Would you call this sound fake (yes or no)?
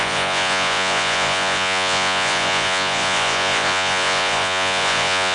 yes